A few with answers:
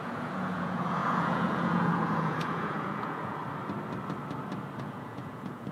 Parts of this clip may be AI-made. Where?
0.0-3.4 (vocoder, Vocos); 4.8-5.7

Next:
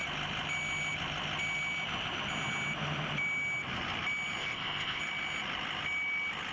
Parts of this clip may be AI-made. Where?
4.4-5.0 (codec, ZipCodec)

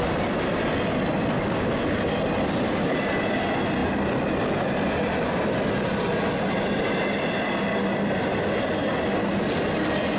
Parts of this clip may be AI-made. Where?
none

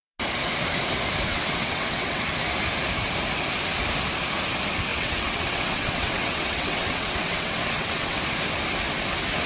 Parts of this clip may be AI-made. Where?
1.3-2.2 (vocoder, WaveNeXt); 4.9-8.2

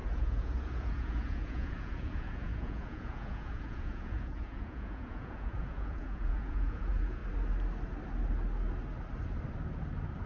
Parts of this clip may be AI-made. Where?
0.0-7.2 (vocoder, Vocos)

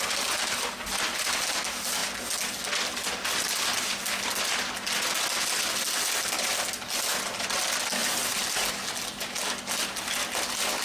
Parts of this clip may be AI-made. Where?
none